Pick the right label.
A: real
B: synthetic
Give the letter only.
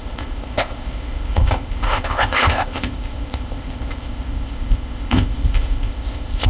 B